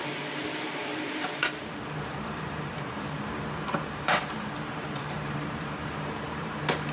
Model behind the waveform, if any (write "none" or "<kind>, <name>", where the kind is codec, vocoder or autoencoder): vocoder, BigVGAN v2